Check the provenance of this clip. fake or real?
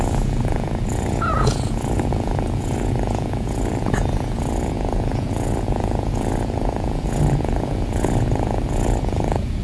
fake